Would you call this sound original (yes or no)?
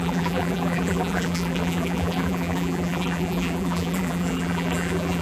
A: no